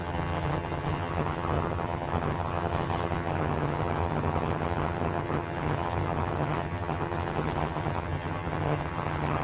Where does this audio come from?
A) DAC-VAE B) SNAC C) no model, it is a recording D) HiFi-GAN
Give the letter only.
D